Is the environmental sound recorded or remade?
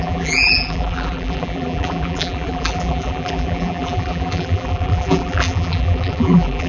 remade